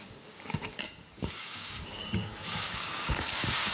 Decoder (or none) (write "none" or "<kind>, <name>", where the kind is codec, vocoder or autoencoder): codec, DAC